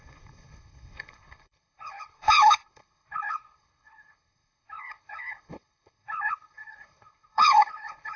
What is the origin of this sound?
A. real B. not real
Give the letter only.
B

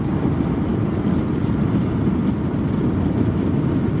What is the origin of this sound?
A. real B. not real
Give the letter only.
A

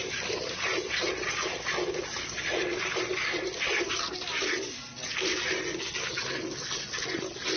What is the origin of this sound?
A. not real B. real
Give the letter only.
B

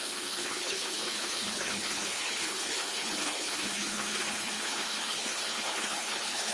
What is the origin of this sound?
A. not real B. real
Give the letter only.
A